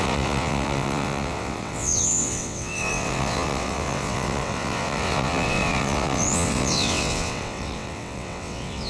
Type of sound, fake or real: fake